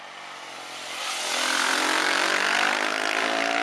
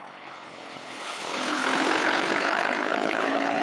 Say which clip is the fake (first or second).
second